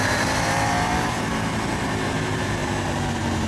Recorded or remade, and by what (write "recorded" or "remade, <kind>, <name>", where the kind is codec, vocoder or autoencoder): remade, vocoder, BigVGAN v2